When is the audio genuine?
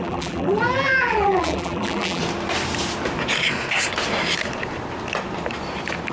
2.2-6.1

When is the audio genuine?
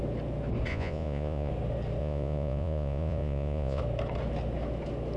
0.0-0.7; 1.5-2.0; 3.8-5.2